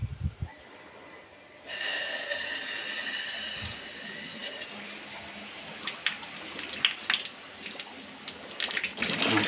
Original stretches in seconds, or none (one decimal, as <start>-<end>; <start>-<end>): 0.0-9.5